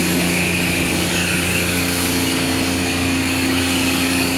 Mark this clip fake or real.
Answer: fake